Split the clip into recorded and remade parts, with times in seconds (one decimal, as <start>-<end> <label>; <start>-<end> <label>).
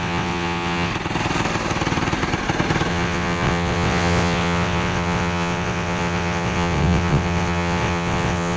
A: 0.0-0.9 remade; 0.9-2.9 recorded; 2.9-8.6 remade